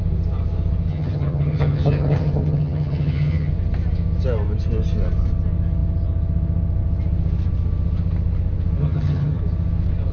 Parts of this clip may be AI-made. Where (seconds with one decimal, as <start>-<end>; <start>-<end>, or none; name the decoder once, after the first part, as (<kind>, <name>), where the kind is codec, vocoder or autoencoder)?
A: 0.9-3.5 (vocoder, HiFi-GAN); 8.8-9.4